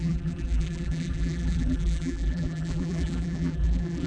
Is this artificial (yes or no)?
yes